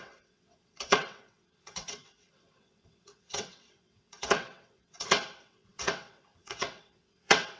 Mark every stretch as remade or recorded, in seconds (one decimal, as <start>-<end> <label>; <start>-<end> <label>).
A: 0.0-7.6 remade

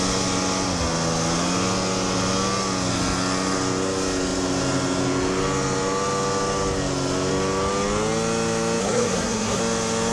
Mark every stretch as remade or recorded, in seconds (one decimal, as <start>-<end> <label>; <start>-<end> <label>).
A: 0.0-8.8 recorded; 8.8-9.6 remade; 9.6-10.1 recorded

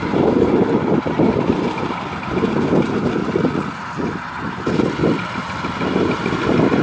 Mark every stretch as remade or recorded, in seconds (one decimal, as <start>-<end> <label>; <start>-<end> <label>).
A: 0.0-3.2 recorded; 3.2-3.9 remade; 3.9-6.8 recorded

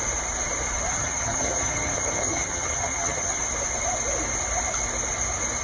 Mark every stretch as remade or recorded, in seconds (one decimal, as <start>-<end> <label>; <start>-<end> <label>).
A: 0.0-0.9 recorded; 0.9-3.4 remade; 3.4-5.6 recorded

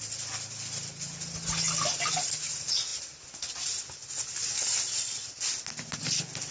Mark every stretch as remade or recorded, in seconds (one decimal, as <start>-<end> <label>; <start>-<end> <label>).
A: 0.0-6.5 recorded

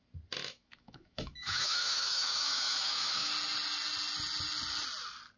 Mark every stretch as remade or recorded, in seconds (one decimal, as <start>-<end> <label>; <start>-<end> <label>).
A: 0.0-0.4 recorded; 0.4-3.3 remade; 3.3-5.4 recorded

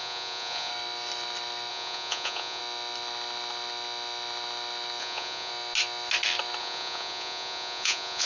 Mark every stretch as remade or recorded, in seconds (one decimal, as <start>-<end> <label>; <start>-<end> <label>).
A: 0.0-0.7 remade; 0.7-1.7 recorded; 1.7-2.6 remade; 2.6-5.0 recorded; 5.0-5.5 remade; 5.5-6.6 recorded; 6.6-8.3 remade